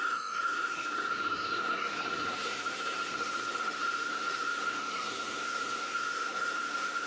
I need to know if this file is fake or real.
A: fake